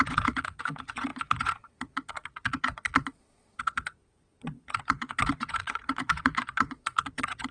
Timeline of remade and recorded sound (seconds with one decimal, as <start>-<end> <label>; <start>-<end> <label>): 0.0-7.5 remade